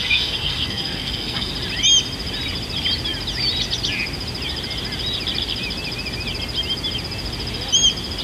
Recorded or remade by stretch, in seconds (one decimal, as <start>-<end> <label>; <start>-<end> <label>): 0.0-1.5 remade; 1.5-8.2 recorded